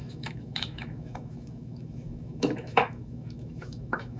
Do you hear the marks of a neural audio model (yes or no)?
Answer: yes